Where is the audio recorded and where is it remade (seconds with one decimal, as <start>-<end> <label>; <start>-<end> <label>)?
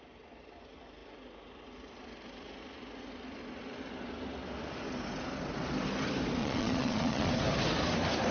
0.0-6.4 recorded; 6.4-7.3 remade; 7.3-8.3 recorded